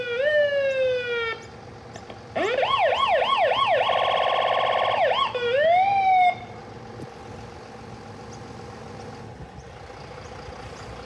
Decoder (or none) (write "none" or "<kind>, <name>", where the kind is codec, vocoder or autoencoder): none